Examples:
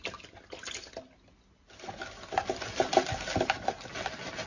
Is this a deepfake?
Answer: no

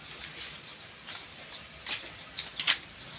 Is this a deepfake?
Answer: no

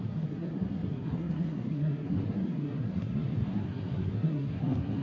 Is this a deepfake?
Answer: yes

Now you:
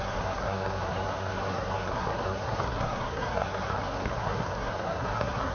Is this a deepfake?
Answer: yes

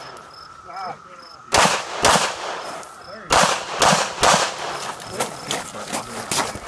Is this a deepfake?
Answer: no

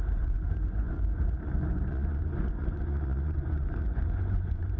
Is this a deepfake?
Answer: yes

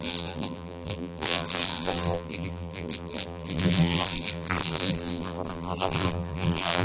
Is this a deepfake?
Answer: yes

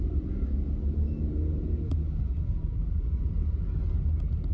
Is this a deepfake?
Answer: no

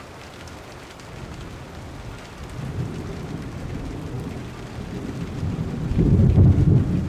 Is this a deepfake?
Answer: no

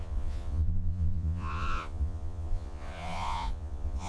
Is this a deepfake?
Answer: yes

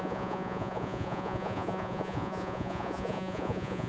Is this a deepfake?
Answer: yes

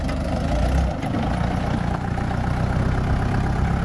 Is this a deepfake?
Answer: no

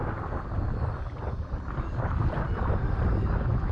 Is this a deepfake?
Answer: no